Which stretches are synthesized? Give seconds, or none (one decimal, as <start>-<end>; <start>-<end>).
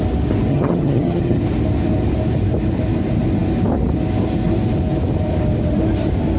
0.5-1.4